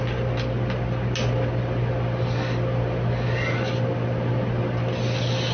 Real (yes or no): yes